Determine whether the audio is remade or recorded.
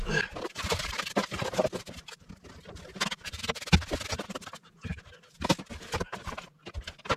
recorded